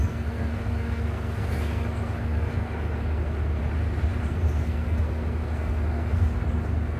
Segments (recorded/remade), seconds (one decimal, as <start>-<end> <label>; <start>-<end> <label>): 0.0-3.6 remade; 3.6-4.2 recorded; 4.2-7.0 remade